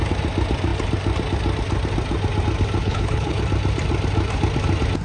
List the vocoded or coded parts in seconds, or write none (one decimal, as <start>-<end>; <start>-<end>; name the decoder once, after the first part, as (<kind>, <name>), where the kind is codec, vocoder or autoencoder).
2.8-3.4 (codec, HILCodec)